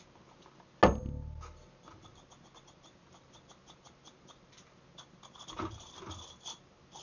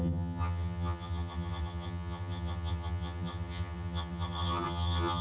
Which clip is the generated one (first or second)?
second